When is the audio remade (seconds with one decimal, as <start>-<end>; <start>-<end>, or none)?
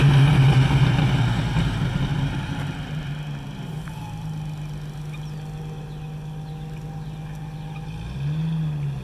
none